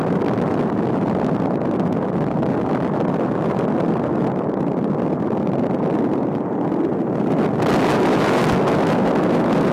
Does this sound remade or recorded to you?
recorded